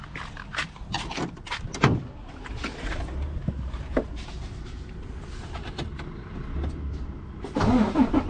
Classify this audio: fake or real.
real